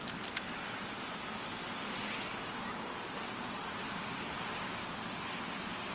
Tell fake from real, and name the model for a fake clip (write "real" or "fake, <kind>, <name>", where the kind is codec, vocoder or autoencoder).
real